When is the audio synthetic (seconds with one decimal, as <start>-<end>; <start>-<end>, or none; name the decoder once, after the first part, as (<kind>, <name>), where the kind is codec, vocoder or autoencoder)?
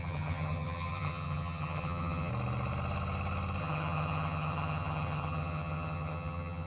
0.0-2.3 (vocoder, HiFi-GAN); 3.6-6.7